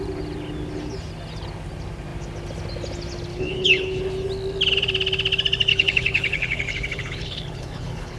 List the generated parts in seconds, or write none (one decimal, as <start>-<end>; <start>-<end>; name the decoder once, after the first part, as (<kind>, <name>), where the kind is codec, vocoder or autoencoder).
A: 3.3-4.0 (codec, HILCodec); 5.7-8.2